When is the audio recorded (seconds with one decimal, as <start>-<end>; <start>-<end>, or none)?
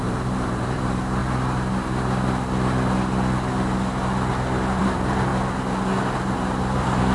1.2-4.8; 5.3-6.6